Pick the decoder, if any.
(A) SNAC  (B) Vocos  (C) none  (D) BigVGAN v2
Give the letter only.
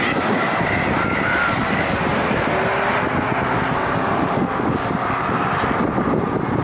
C